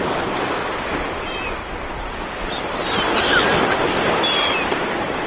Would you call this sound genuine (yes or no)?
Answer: yes